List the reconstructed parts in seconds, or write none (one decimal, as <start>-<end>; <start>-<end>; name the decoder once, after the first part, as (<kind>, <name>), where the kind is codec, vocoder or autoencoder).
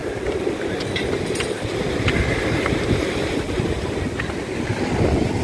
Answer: none